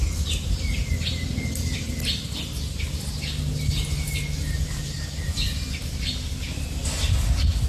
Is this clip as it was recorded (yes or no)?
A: yes